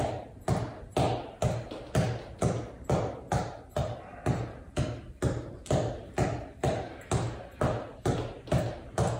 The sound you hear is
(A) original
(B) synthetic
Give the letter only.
A